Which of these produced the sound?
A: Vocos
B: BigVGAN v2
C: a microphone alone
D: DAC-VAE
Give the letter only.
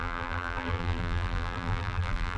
B